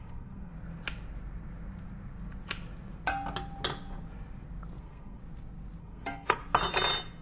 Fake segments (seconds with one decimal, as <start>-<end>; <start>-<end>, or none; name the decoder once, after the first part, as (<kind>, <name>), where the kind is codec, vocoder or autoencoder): 0.0-0.5 (codec, SNAC); 4.8-5.2; 5.8-6.4